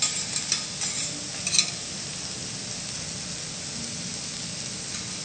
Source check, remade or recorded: recorded